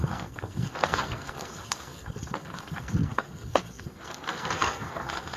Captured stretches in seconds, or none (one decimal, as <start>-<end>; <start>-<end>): none